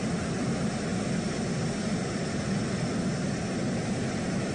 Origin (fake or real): real